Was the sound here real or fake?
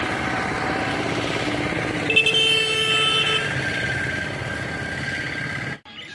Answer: real